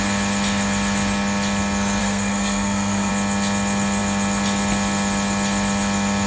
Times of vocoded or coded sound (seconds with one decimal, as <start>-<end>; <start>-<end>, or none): 2.0-3.1